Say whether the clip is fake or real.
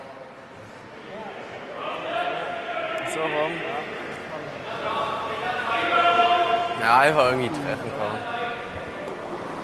real